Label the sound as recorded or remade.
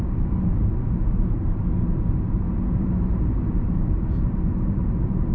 remade